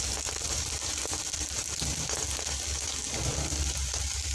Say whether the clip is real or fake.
real